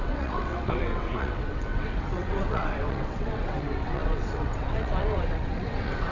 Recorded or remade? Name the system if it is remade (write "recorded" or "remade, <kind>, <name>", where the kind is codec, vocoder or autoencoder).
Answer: remade, vocoder, WaveNeXt